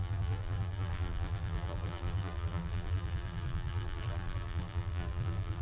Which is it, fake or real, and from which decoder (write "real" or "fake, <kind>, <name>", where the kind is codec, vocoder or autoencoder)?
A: fake, vocoder, BigVGAN v2